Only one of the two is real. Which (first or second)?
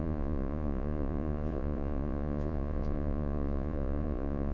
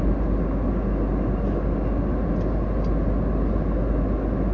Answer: second